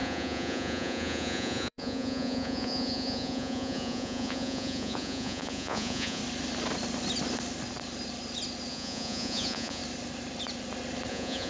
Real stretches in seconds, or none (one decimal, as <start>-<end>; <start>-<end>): 6.2-8.7; 9.8-11.1